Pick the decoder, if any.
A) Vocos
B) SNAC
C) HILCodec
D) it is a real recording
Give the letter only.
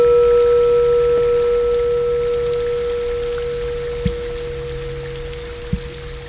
D